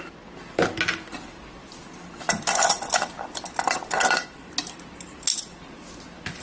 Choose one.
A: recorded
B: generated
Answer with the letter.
A